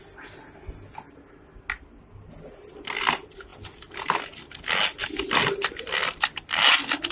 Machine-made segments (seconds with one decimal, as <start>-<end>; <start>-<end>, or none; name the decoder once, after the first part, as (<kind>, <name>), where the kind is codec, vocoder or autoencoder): none